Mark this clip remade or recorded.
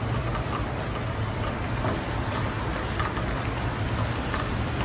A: recorded